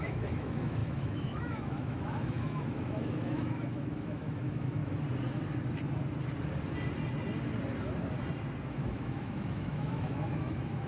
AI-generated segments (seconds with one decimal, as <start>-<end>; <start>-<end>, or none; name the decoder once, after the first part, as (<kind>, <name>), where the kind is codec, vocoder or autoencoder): 0.0-4.8 (autoencoder, DAC-VAE); 8.7-10.9